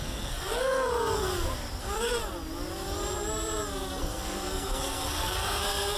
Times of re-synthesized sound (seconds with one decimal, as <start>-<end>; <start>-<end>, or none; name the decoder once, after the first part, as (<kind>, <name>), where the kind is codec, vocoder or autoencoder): 0.0-1.3 (codec, SNAC); 1.8-2.2; 4.0-6.0